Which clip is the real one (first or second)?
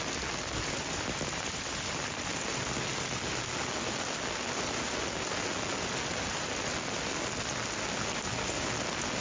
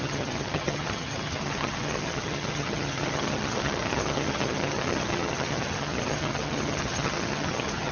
first